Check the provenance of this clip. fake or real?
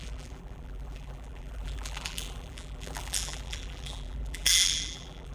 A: fake